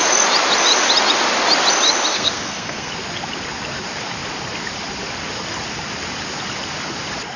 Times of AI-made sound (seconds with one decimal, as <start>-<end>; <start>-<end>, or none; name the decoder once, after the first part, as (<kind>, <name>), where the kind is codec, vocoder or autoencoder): 2.1-2.9 (codec, SNAC)